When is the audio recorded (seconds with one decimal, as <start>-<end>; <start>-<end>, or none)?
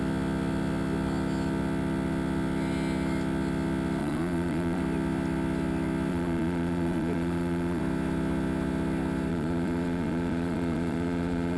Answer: 0.0-4.0; 4.8-6.1; 7.8-9.3